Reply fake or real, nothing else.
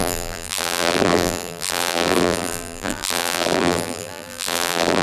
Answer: fake